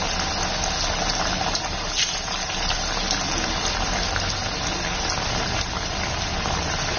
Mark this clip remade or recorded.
recorded